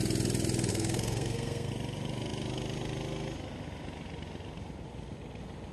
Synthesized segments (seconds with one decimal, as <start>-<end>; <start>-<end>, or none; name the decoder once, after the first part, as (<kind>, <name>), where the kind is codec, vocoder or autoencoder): 0.7-1.7 (codec, SNAC)